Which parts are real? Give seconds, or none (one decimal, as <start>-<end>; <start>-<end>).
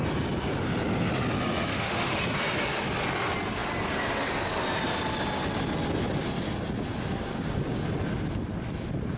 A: 0.0-1.7; 2.2-9.2